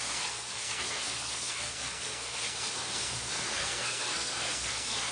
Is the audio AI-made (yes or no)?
yes